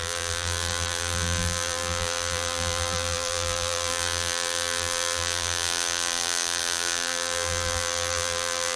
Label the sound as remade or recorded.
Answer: remade